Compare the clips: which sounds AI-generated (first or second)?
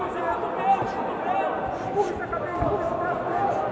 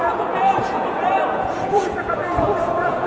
second